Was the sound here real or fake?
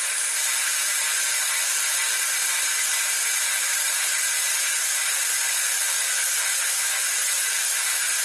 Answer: real